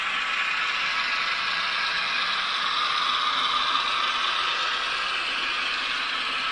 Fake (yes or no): no